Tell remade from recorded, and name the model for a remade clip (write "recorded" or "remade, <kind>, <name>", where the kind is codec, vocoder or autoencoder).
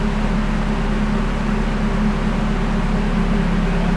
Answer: recorded